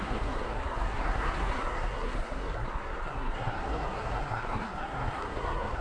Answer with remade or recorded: remade